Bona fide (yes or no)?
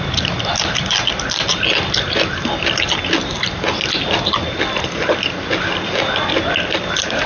yes